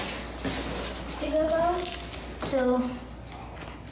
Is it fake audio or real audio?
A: real